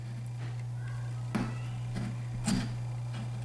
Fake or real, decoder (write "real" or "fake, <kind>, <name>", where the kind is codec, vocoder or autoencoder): real